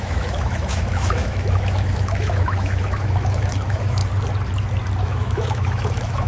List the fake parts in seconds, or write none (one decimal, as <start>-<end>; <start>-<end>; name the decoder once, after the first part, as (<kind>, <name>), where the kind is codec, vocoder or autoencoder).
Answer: 0.0-4.0 (autoencoder, DAC-VAE); 5.0-6.3